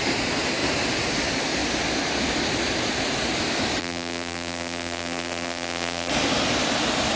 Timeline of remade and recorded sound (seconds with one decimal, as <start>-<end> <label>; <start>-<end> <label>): 0.0-3.8 recorded; 3.8-6.1 remade; 6.1-7.2 recorded